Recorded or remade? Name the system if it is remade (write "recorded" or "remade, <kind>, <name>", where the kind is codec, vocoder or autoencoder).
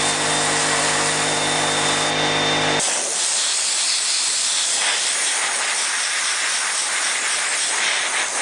recorded